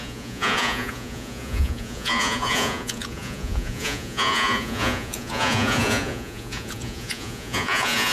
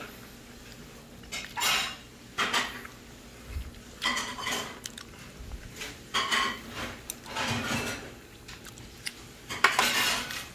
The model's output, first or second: first